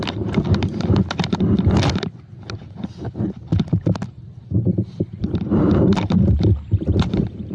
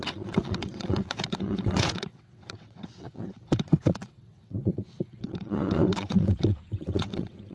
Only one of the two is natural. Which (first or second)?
first